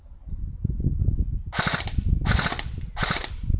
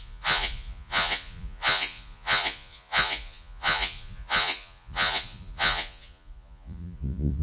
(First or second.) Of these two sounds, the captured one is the first